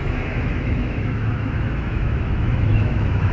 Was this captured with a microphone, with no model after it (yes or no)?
no